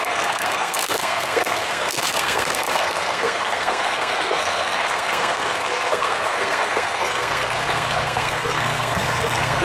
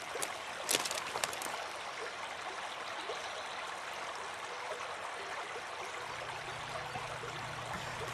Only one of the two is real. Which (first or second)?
second